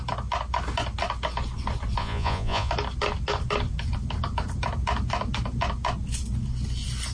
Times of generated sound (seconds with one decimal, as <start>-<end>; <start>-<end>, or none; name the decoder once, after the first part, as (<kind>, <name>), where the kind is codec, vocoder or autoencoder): 2.0-2.7 (vocoder, Vocos)